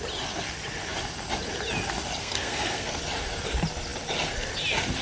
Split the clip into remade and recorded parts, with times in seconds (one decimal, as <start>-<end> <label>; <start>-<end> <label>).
0.0-2.2 recorded; 2.2-3.0 remade; 3.0-5.0 recorded